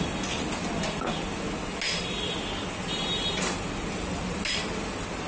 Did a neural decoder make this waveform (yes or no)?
no